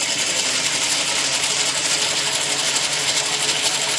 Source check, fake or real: real